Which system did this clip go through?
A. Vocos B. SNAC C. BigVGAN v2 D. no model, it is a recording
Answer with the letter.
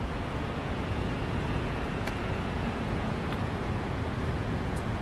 A